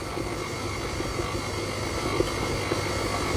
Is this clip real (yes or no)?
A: yes